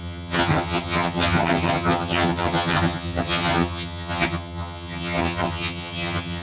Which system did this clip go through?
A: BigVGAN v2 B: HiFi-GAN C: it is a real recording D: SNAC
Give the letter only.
B